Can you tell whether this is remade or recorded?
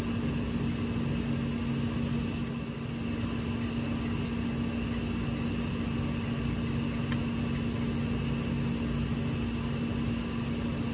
recorded